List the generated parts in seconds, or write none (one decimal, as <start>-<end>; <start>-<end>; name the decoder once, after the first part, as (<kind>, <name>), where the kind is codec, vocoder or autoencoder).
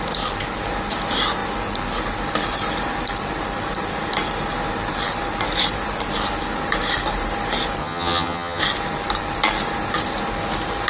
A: 7.8-8.6 (vocoder, HiFi-GAN)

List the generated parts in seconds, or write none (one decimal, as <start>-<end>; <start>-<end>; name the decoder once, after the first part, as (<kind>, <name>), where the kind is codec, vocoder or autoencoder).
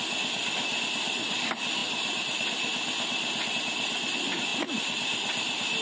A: none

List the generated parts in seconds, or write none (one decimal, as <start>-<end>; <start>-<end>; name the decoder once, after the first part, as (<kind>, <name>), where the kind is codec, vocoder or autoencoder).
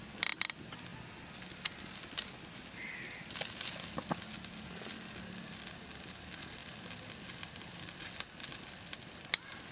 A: none